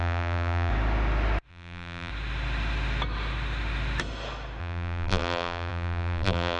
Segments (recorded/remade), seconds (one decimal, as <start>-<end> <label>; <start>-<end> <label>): 0.0-0.7 remade; 0.7-1.5 recorded; 1.5-2.1 remade; 2.1-4.6 recorded; 4.6-6.6 remade